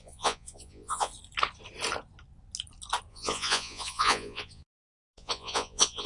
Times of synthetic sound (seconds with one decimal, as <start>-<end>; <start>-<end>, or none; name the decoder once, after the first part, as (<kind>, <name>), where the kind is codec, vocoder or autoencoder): 0.0-1.1 (vocoder, Vocos); 3.1-6.1